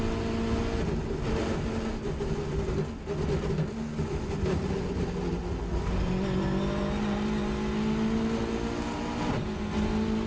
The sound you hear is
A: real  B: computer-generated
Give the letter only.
A